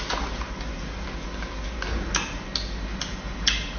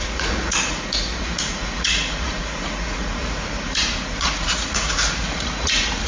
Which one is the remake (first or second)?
second